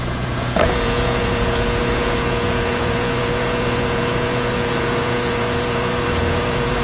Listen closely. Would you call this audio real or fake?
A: fake